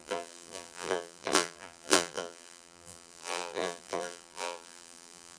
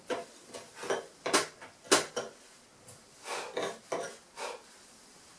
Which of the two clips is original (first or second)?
second